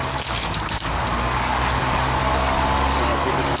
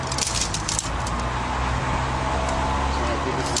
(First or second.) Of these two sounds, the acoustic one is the second